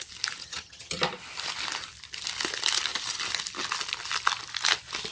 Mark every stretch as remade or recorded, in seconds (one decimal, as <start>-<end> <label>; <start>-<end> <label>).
0.0-0.4 recorded; 0.4-1.0 remade; 1.0-5.1 recorded